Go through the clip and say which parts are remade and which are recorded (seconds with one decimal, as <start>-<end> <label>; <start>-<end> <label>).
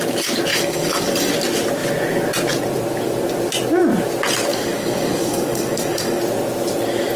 0.0-0.5 recorded; 0.5-1.3 remade; 1.3-4.5 recorded; 4.5-6.2 remade; 6.2-7.2 recorded